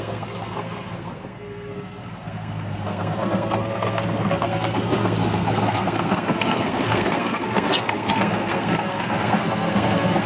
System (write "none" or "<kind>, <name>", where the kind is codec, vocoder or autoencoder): codec, SNAC